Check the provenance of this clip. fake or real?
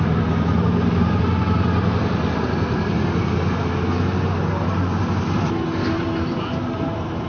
real